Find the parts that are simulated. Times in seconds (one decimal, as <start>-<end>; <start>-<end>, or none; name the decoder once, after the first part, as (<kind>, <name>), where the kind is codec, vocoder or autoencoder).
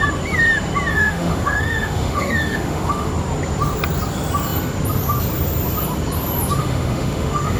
0.9-3.1 (autoencoder, DAC-VAE); 6.6-7.6